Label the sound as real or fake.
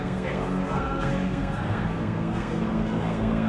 fake